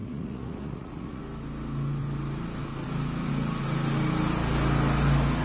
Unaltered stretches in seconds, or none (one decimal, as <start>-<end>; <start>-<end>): 1.2-5.4